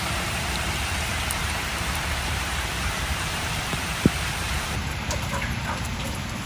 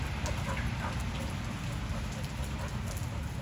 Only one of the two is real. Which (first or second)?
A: second